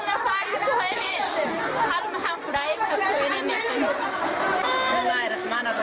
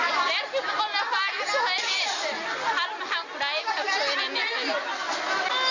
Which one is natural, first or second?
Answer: second